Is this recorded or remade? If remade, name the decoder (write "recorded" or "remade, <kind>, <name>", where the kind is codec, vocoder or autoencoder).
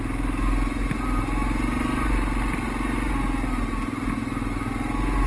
recorded